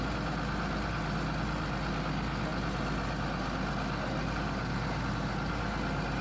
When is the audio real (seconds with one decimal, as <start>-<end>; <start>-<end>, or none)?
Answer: 0.0-6.2